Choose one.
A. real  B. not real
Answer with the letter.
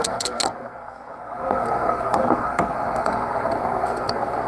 B